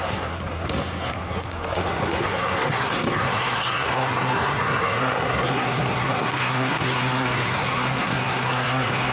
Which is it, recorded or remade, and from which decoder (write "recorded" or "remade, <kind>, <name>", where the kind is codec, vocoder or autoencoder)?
remade, codec, SNAC